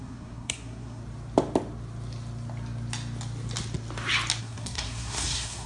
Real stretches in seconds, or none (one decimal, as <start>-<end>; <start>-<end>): 1.0-4.4